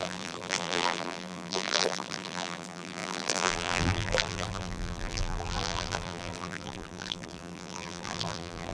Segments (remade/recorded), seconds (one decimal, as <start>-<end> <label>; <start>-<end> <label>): 0.0-8.7 remade